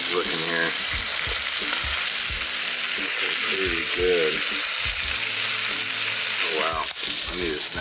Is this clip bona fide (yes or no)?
yes